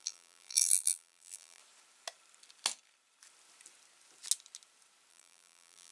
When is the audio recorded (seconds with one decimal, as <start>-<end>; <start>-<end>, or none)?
1.6-5.1